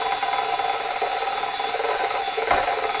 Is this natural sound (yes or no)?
yes